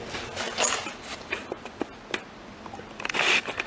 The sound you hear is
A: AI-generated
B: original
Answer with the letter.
B